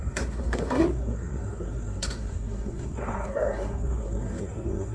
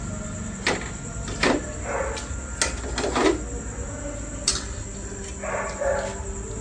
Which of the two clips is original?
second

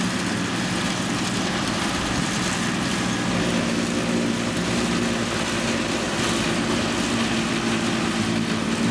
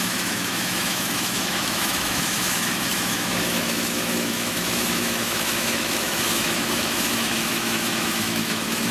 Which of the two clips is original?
first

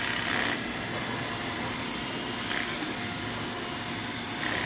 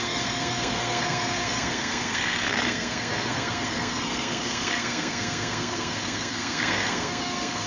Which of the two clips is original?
first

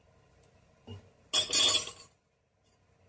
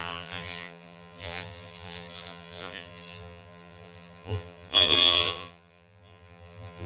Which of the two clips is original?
first